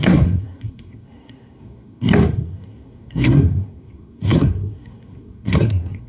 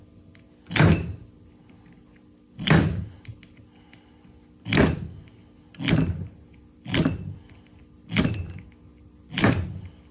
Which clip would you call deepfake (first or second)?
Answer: first